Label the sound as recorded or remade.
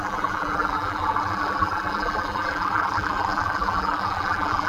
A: remade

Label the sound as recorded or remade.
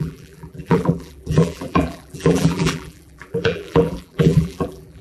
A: remade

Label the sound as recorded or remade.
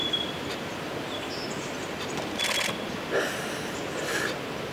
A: recorded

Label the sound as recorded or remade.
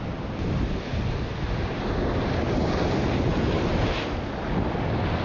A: recorded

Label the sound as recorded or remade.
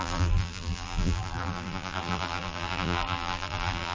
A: remade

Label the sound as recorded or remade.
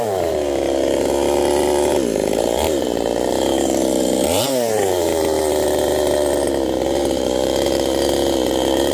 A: remade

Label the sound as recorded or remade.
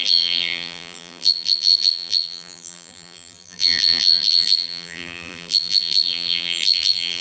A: remade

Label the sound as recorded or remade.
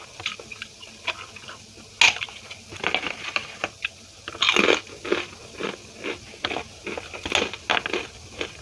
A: recorded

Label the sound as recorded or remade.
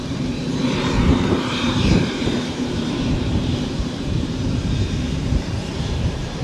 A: remade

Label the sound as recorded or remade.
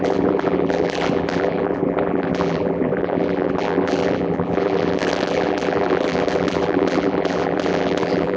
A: remade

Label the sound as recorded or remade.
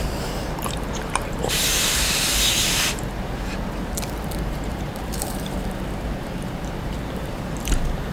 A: remade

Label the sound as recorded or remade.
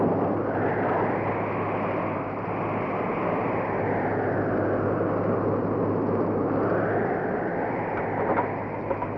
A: recorded